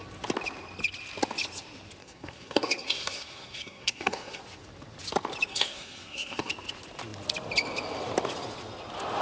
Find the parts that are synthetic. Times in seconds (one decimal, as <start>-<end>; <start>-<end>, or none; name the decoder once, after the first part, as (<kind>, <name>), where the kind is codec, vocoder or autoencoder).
2.0-4.4 (codec, SNAC); 5.5-6.5

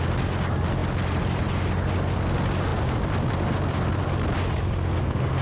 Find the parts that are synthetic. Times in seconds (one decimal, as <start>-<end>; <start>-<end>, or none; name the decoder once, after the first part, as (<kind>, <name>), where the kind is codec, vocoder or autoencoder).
none

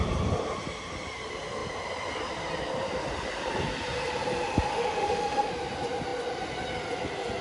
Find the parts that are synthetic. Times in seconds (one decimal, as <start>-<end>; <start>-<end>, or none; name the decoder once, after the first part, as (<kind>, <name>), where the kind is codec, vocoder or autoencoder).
4.7-5.5 (autoencoder, DAC-VAE)